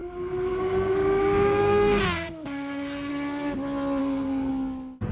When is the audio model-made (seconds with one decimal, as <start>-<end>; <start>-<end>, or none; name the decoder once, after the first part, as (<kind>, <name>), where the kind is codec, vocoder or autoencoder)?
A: 0.0-3.1 (codec, SNAC); 4.0-4.5